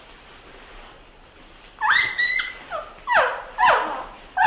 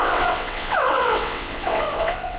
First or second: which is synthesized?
second